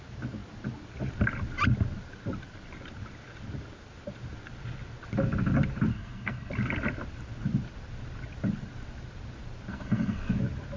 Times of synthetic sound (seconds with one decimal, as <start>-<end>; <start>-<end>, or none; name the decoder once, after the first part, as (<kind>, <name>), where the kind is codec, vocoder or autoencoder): 5.9-6.5 (codec, SNAC); 9.7-10.4